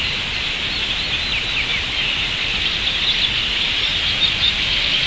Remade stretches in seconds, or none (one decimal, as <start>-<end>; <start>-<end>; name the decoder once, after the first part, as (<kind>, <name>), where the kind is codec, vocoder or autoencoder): none